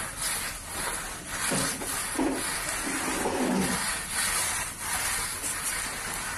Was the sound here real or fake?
real